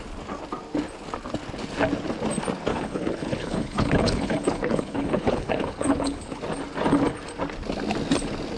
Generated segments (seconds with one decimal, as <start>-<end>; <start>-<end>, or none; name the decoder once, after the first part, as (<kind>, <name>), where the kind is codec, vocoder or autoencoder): 2.7-6.4 (codec, HILCodec)